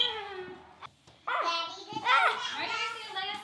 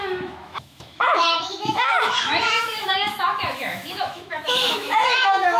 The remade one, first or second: second